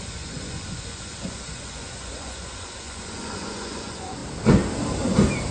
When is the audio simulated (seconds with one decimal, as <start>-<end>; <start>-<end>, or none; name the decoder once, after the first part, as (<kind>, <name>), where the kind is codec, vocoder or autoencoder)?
0.0-4.2 (vocoder, Vocos)